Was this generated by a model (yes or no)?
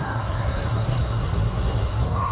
yes